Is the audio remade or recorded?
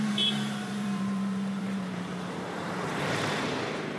remade